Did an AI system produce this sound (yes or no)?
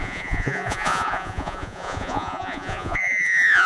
yes